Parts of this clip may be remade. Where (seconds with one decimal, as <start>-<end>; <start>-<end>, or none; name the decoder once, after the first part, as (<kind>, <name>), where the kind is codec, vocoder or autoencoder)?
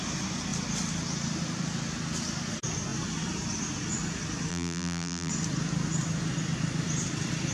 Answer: 4.5-5.3 (vocoder, BigVGAN v2)